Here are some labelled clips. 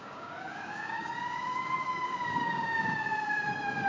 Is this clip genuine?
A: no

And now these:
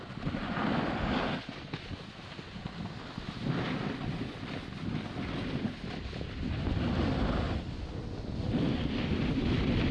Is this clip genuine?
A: yes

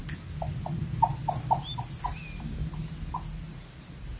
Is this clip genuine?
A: yes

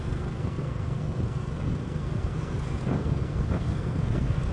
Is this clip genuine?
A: no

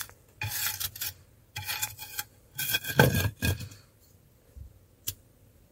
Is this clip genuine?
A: yes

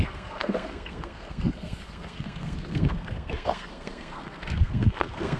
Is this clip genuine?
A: no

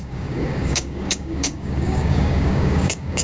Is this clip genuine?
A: no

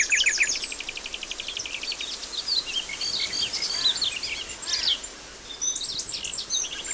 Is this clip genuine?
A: yes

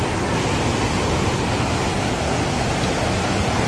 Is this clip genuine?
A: yes